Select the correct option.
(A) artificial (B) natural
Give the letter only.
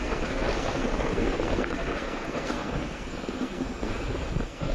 A